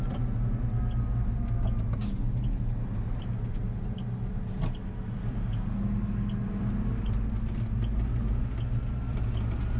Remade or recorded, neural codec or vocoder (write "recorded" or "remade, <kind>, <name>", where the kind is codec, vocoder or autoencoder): recorded